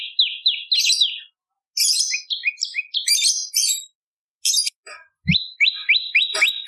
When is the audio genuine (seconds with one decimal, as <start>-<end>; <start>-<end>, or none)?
0.0-6.7